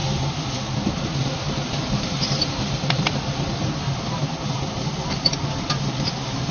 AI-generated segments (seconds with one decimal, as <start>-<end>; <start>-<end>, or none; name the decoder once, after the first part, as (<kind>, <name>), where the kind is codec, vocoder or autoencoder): none